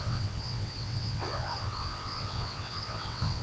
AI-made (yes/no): yes